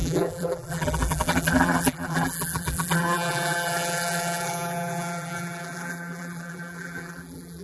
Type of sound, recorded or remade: remade